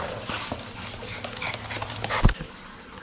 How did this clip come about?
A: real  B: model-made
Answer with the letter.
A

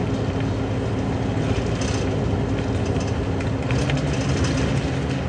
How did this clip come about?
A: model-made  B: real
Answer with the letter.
B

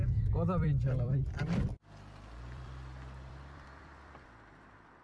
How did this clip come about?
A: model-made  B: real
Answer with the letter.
A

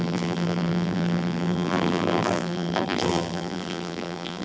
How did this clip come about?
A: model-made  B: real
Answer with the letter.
A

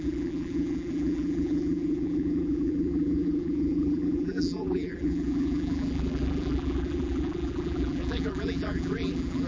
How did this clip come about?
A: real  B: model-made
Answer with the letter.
B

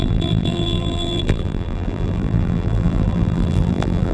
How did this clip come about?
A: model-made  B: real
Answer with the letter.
A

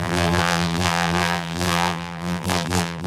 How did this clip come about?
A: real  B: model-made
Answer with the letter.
B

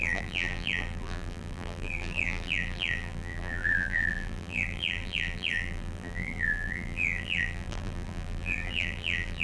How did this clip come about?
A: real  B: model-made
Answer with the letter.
B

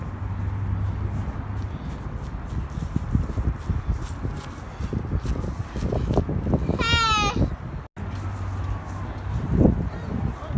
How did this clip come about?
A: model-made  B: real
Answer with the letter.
B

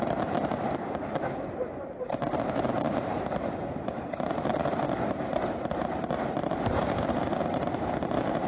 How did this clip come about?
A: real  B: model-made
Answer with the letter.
B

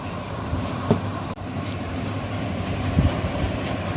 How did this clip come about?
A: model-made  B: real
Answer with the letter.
A